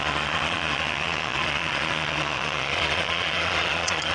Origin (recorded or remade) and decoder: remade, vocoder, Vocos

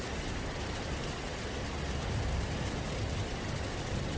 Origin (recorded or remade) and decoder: recorded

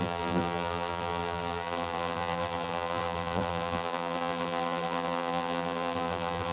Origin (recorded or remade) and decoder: remade, vocoder, BigVGAN v2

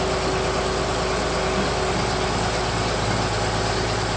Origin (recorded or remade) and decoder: recorded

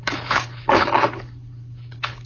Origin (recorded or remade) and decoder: remade, codec, HILCodec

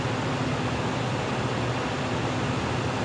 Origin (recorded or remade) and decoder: recorded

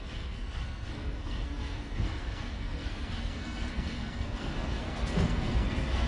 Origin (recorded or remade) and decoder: remade, codec, SNAC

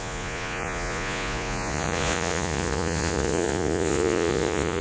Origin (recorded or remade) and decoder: remade, vocoder, Vocos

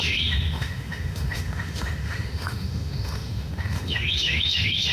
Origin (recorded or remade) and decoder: remade, autoencoder, DAC-VAE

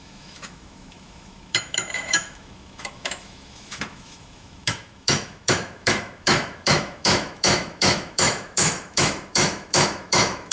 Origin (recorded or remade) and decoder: remade, autoencoder, DAC-VAE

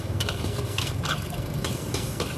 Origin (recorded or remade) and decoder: remade, codec, SNAC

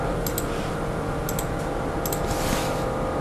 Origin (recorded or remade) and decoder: recorded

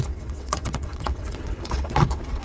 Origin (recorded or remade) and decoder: remade, vocoder, WaveNeXt